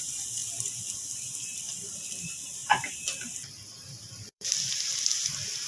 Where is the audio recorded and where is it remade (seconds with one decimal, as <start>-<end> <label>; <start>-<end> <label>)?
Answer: 0.0-0.4 remade; 0.4-1.0 recorded; 1.0-5.7 remade